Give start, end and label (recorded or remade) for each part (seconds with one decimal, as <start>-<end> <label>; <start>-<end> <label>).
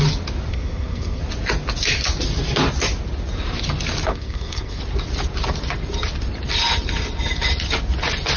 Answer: 0.0-0.5 recorded; 0.5-1.2 remade; 1.2-4.1 recorded; 4.1-4.8 remade; 4.8-8.4 recorded